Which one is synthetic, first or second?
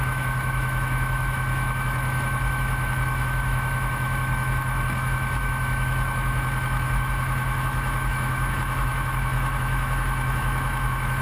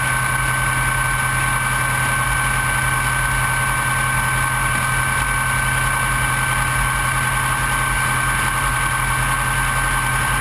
first